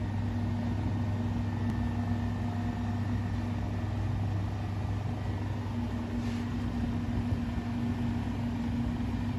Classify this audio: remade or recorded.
recorded